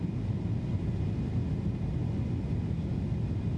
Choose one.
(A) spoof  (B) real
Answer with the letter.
B